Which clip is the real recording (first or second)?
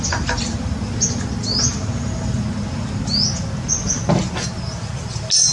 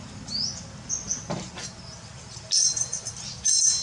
first